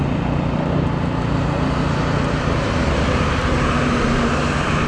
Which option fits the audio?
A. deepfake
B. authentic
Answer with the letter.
B